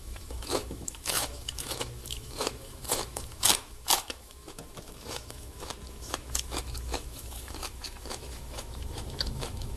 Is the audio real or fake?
fake